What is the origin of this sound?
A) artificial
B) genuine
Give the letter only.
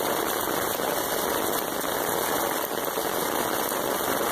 B